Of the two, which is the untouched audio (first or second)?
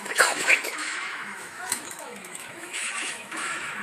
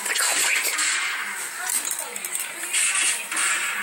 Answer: second